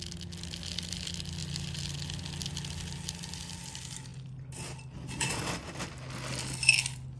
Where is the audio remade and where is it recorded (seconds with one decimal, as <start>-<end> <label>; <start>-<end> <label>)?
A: 0.0-7.2 recorded